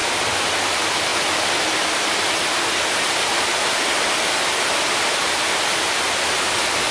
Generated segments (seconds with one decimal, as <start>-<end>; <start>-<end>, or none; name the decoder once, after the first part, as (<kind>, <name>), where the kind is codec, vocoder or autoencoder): none